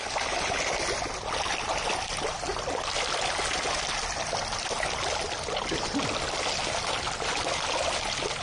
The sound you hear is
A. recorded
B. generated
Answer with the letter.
A